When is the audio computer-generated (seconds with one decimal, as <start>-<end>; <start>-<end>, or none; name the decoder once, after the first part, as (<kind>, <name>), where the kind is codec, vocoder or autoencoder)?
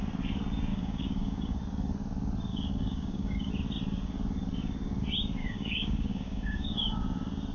0.7-1.6 (codec, DAC); 2.5-3.5; 5.4-7.0